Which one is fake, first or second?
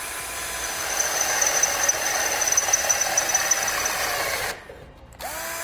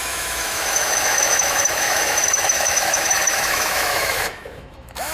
second